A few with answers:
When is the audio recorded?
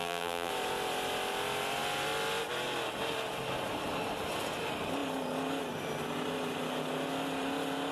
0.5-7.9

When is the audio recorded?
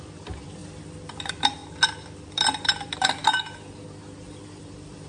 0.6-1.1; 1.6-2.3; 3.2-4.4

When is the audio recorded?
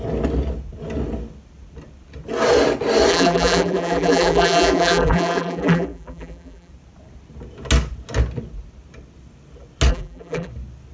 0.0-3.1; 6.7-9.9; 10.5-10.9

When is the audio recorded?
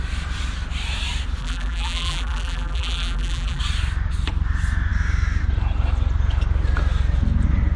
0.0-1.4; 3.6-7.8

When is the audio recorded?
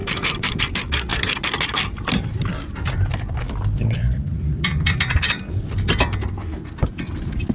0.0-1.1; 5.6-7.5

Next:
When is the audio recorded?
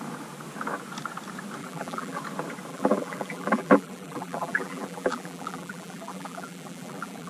0.0-1.6; 2.2-2.7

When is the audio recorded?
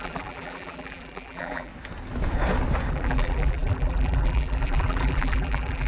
1.7-2.9